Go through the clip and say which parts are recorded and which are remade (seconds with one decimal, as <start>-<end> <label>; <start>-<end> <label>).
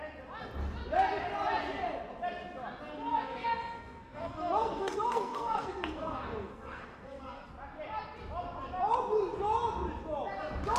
0.0-3.1 recorded; 3.1-7.5 remade; 7.5-10.8 recorded